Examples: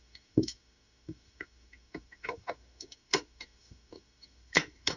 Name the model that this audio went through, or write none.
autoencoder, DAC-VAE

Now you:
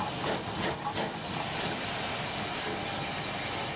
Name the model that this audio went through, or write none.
none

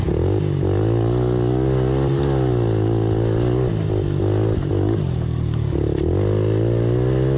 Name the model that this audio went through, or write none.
none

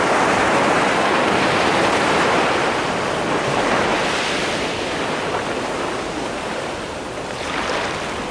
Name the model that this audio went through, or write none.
none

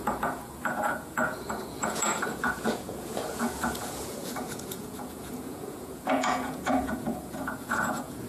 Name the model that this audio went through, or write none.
vocoder, Vocos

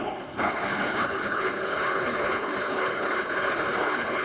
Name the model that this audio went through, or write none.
codec, HILCodec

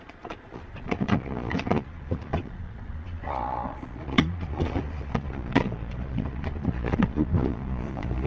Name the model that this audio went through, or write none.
vocoder, Vocos